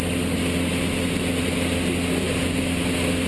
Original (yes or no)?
yes